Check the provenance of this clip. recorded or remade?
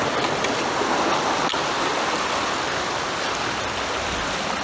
recorded